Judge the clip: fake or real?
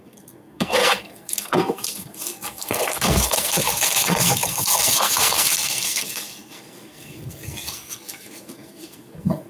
fake